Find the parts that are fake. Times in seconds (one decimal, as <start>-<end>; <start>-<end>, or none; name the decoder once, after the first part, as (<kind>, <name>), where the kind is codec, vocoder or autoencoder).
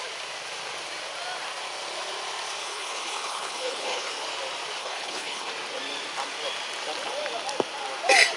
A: 2.6-4.1 (codec, HILCodec); 4.8-5.5